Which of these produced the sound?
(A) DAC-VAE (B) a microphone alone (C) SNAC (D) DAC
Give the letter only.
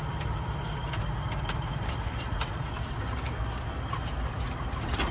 B